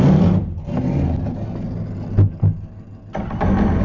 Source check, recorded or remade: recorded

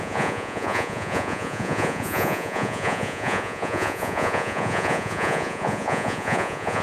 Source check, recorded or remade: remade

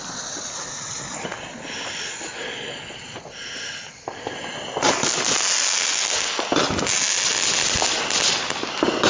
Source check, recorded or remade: recorded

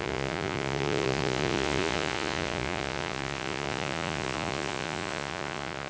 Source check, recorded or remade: remade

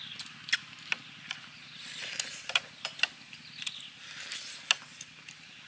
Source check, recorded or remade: recorded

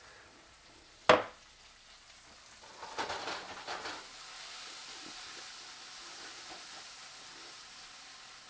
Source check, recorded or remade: recorded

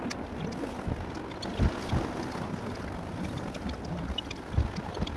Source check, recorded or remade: recorded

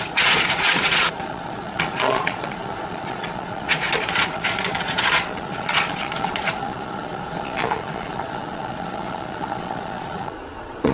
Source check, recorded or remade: remade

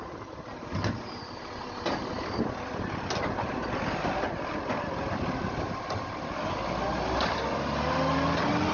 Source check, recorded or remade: recorded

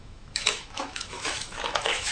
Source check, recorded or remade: remade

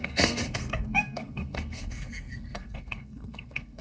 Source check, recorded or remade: remade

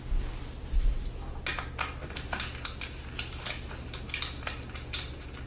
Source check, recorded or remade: recorded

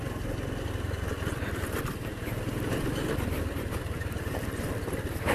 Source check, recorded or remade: recorded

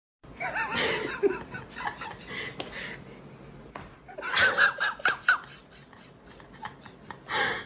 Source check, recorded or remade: recorded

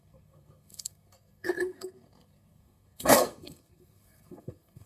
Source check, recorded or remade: remade